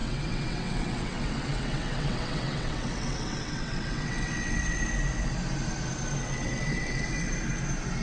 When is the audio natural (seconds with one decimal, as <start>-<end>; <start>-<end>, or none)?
4.8-6.2; 7.3-8.0